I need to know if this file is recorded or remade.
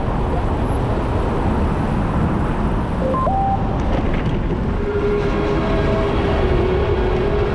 recorded